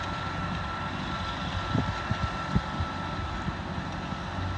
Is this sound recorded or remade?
recorded